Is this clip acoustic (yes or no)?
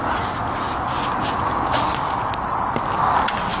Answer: yes